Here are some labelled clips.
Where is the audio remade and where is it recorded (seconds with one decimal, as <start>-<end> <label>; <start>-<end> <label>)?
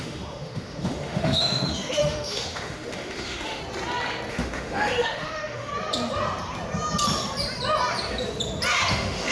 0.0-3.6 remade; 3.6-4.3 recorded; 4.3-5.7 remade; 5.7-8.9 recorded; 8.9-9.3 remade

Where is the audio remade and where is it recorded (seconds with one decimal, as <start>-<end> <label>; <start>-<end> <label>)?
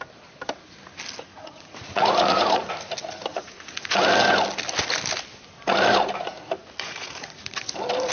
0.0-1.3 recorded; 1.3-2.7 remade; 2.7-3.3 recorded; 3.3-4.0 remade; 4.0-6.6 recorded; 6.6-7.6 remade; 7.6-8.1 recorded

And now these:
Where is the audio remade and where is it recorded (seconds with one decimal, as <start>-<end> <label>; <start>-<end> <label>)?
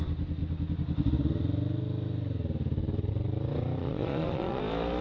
0.0-3.8 recorded; 3.8-4.6 remade; 4.6-5.0 recorded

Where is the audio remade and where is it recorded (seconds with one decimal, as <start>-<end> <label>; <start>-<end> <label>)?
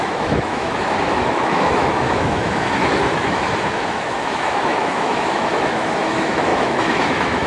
0.0-7.5 remade